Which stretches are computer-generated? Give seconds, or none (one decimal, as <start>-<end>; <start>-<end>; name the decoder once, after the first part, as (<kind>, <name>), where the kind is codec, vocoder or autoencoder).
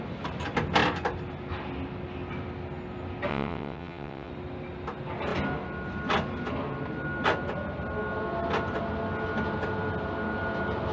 3.3-4.3 (vocoder, WaveNeXt)